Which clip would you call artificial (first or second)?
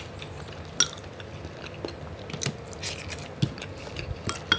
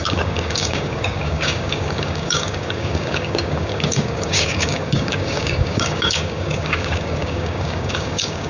second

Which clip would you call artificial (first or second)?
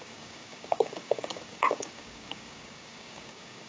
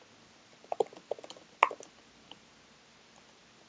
first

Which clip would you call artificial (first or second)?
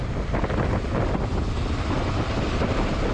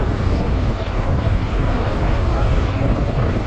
second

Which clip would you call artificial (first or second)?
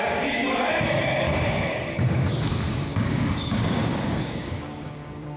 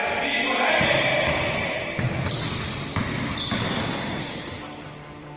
first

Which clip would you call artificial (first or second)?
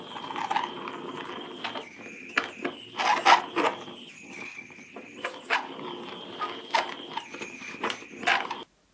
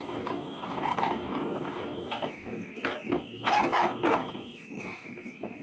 second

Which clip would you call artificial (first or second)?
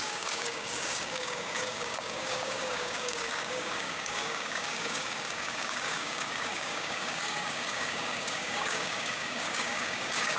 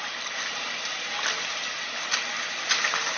first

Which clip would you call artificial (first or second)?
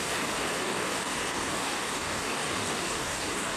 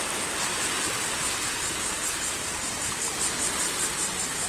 first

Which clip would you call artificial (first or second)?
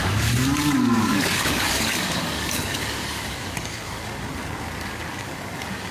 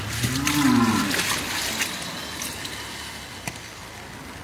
first